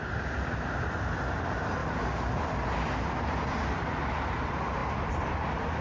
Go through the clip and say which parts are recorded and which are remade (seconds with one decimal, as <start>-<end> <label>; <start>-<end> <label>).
0.0-5.8 recorded